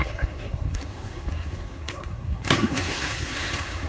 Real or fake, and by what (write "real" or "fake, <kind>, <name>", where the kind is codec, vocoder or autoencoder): fake, codec, SNAC